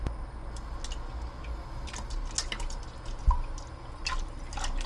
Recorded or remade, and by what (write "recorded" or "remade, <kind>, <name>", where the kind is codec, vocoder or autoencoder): recorded